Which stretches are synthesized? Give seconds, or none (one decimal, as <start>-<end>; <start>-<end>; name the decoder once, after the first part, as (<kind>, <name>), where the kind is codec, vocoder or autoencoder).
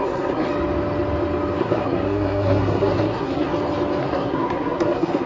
0.0-0.5 (codec, SNAC); 1.6-3.5; 4.0-5.3